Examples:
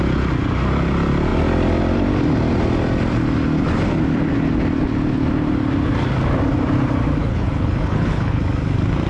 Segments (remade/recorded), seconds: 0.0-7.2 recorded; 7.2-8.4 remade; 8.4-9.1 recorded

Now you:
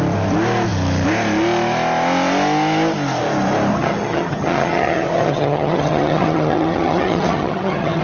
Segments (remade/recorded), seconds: 0.0-3.7 recorded; 3.7-8.0 remade

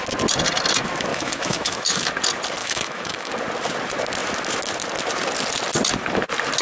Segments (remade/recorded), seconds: 0.0-1.1 recorded; 1.1-2.1 remade; 2.1-2.6 recorded; 2.6-3.3 remade; 3.3-6.6 recorded

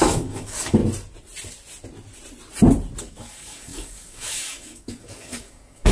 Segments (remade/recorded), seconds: 0.0-0.8 remade; 0.8-3.0 recorded; 3.0-5.9 remade

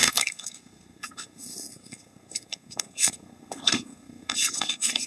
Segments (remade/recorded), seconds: 0.0-5.1 remade

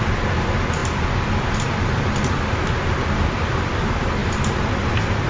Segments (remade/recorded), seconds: 0.0-0.8 remade; 0.8-1.9 recorded; 1.9-5.3 remade

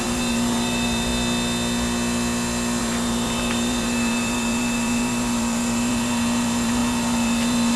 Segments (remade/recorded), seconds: 0.0-1.1 remade; 1.1-2.8 recorded; 2.8-7.8 remade

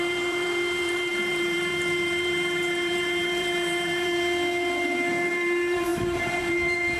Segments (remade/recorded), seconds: 0.0-7.0 remade